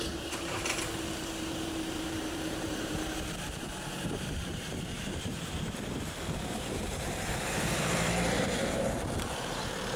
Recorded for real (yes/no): no